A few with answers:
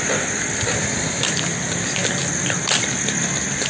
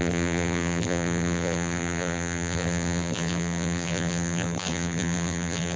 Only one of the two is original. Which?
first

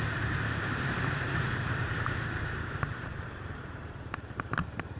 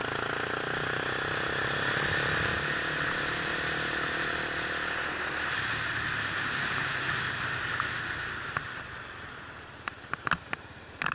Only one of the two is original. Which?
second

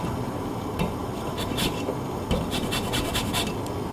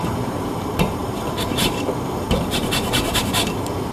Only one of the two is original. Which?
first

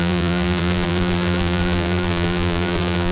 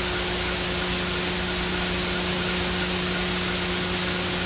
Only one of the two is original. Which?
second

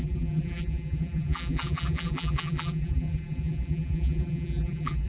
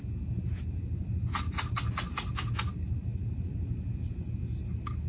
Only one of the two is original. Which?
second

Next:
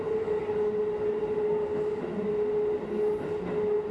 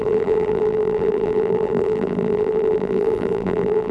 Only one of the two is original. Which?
first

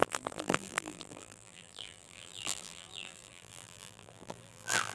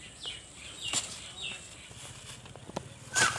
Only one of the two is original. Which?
second